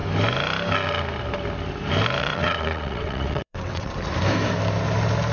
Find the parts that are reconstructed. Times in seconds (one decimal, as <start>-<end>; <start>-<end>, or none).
2.2-3.9